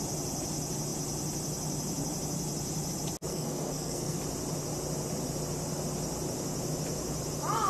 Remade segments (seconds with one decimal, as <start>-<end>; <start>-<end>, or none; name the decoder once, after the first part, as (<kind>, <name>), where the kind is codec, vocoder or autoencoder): 3.3-4.2 (codec, SNAC)